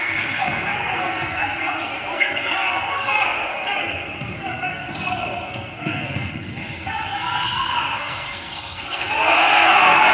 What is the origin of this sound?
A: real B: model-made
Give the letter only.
B